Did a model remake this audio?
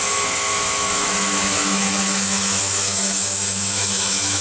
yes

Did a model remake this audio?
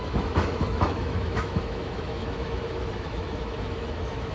yes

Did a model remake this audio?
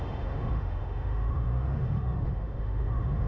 yes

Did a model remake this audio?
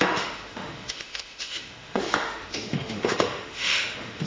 yes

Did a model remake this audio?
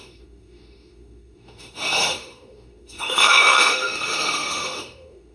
yes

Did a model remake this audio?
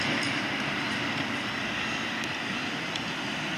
no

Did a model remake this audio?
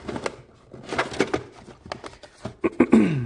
no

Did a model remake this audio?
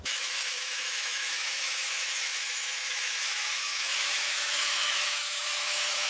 yes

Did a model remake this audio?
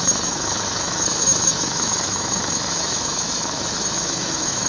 yes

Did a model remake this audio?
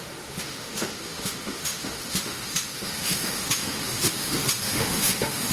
yes